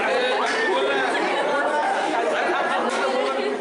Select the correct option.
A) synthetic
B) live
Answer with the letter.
B